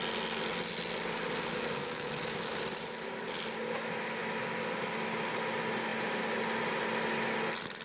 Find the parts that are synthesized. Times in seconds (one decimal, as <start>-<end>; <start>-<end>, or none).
1.8-2.6